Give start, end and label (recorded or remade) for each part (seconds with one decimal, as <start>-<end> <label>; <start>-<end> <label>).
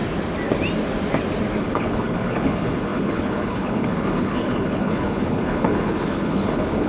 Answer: 0.0-1.6 recorded; 1.6-6.9 remade